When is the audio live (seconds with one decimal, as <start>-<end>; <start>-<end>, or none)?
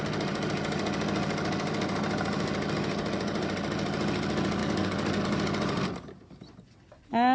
0.0-4.6; 5.2-7.3